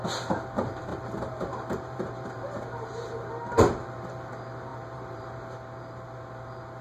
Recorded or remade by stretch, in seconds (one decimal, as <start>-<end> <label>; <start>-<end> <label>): 0.0-0.9 recorded; 0.9-4.3 remade; 4.3-4.7 recorded; 4.7-5.2 remade; 5.2-6.8 recorded